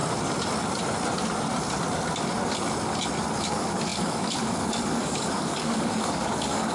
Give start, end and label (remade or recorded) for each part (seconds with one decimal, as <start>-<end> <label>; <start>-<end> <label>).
0.0-3.4 recorded; 3.4-6.7 remade